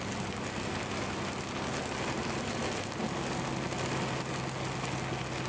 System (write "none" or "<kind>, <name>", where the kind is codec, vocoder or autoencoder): none